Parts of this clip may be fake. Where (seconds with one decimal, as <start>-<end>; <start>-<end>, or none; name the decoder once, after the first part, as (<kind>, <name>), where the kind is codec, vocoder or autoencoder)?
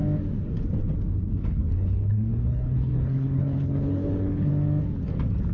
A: 1.3-4.5 (codec, HILCodec)